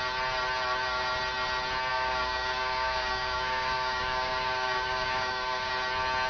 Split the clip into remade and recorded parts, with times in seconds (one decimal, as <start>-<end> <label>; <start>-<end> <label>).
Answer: 0.0-1.9 recorded; 1.9-5.7 remade; 5.7-6.3 recorded